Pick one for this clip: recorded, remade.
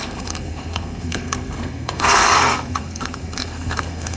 remade